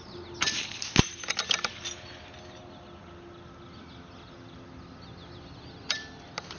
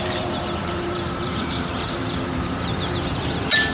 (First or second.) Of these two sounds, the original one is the first